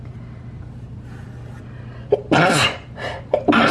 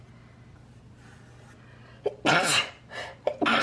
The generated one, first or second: first